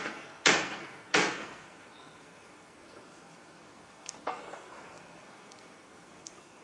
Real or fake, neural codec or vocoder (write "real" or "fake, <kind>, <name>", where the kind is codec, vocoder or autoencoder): fake, codec, SNAC